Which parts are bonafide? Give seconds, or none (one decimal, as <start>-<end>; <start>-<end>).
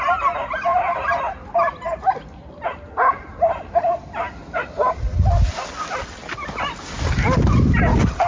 0.0-8.3